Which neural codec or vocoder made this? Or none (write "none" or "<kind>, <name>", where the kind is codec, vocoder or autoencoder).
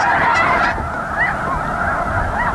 none